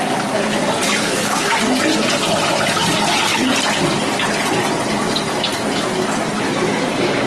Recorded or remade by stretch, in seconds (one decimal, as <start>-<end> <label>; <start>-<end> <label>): 0.0-1.0 recorded; 1.0-1.5 remade; 1.5-7.3 recorded